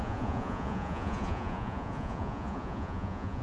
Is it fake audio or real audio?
fake